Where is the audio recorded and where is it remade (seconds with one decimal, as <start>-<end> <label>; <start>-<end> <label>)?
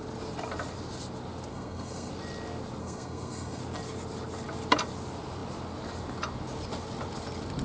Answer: 0.0-1.5 recorded; 1.5-2.1 remade; 2.1-2.8 recorded; 2.8-3.6 remade; 3.6-7.6 recorded